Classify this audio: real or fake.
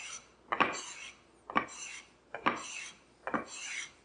real